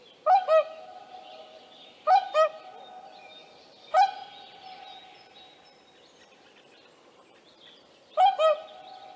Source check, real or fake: real